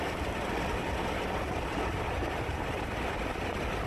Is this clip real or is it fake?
real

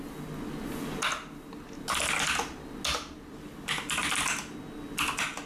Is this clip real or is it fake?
real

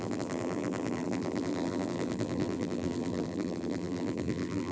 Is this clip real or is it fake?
fake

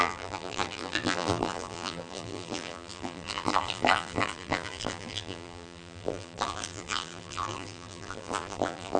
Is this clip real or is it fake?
fake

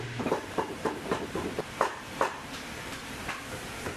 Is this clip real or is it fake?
fake